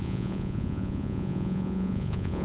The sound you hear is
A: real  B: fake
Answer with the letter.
B